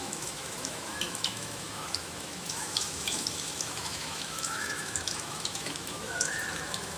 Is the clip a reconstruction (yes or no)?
yes